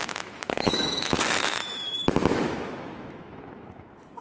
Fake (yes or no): yes